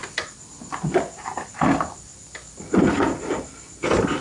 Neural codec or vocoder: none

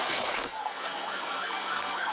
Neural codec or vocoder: codec, SNAC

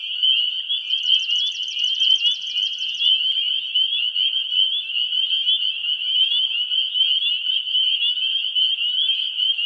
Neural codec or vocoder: none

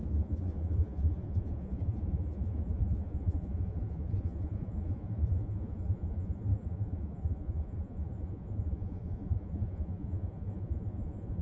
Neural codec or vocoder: vocoder, Vocos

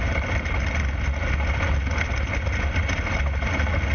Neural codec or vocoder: none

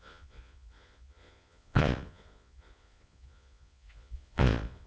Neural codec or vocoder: vocoder, Vocos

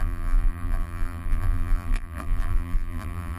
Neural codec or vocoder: vocoder, BigVGAN v2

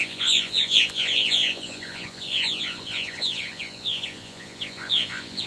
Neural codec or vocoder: vocoder, Vocos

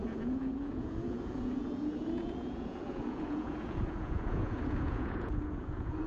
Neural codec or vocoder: vocoder, Vocos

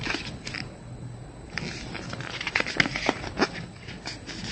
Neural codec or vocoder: none